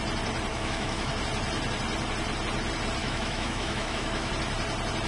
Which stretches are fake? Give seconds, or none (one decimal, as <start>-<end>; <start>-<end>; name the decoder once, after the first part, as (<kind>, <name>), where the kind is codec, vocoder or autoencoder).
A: 0.5-1.1 (autoencoder, DAC-VAE); 3.0-4.3